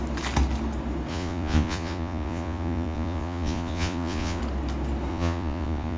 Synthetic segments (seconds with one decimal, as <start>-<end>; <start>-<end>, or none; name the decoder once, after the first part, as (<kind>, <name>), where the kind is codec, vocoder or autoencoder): 1.1-4.4 (vocoder, Vocos); 5.1-6.0